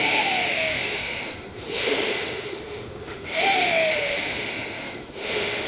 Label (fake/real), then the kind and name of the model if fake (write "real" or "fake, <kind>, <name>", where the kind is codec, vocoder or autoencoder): fake, autoencoder, DAC-VAE